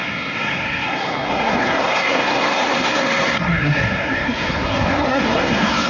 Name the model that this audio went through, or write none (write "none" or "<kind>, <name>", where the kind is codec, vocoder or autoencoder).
codec, SNAC